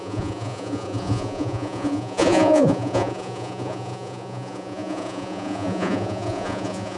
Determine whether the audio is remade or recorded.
remade